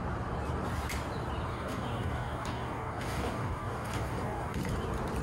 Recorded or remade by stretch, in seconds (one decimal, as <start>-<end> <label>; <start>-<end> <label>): 0.0-1.5 recorded; 1.5-4.6 remade; 4.6-5.2 recorded

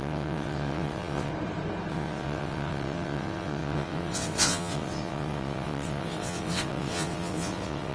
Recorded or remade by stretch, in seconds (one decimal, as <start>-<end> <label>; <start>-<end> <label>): 0.0-1.3 remade; 1.3-1.9 recorded; 1.9-7.9 remade